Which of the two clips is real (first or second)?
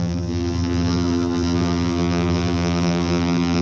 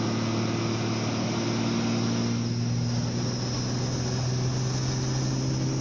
second